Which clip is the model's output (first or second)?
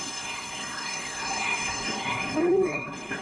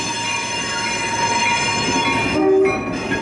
first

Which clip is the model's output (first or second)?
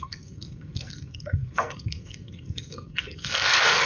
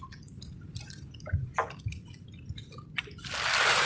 first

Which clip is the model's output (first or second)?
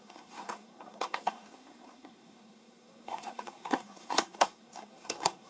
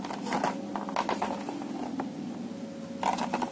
first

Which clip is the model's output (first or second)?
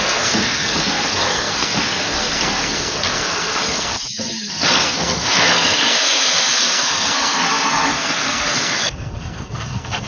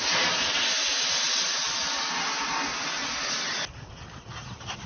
first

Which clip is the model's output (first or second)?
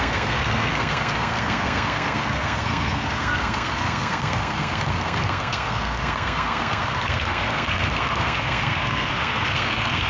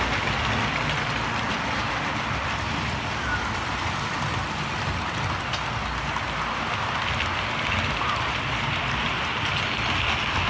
first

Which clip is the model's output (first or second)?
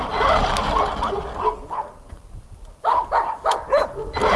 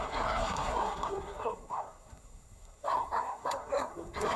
second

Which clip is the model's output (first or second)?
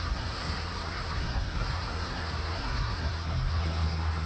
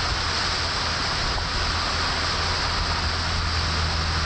first